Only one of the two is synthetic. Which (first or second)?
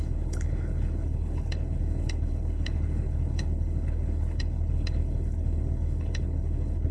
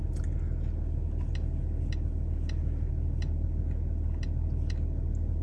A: first